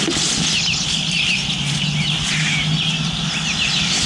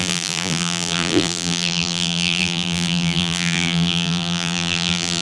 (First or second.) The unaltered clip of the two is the first